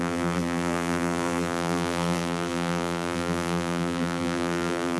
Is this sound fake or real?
fake